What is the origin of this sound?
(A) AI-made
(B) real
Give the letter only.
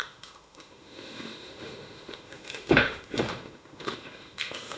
A